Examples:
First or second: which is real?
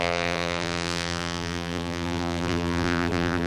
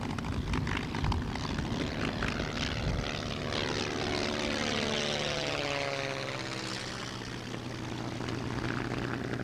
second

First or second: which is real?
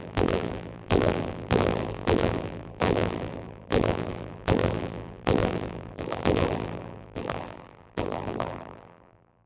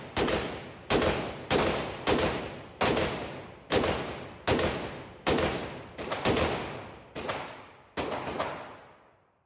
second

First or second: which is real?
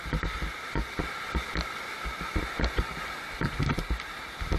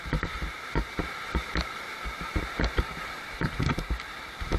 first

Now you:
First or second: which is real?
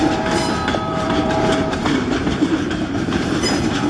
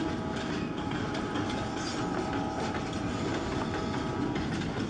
second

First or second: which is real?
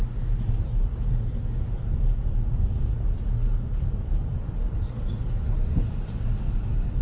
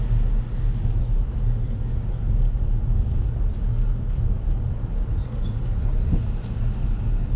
second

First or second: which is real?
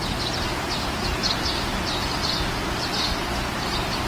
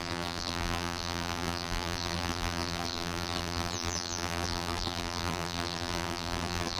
first